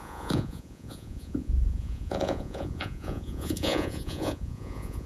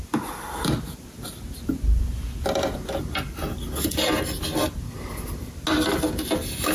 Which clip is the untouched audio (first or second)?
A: second